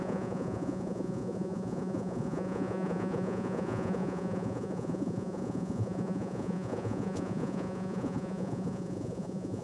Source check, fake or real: fake